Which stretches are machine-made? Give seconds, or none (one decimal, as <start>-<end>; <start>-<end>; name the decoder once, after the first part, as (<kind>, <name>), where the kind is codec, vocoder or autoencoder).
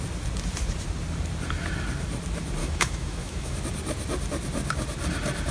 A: 2.6-3.6 (autoencoder, DAC-VAE)